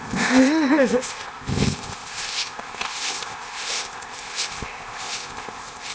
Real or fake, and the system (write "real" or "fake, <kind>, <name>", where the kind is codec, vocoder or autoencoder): fake, codec, ZipCodec